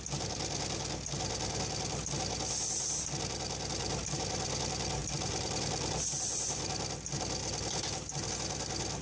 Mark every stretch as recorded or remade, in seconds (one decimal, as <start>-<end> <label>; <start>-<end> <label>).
0.0-5.0 recorded; 5.0-6.0 remade; 6.0-7.4 recorded; 7.4-8.3 remade; 8.3-9.0 recorded